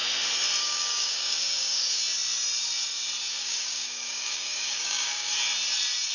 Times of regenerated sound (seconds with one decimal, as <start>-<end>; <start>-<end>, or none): 0.6-2.0; 3.3-5.3